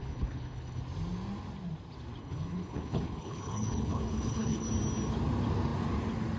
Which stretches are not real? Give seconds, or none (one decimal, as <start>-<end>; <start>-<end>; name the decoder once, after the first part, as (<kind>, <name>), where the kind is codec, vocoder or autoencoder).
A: 0.0-0.8 (codec, HILCodec); 2.2-4.7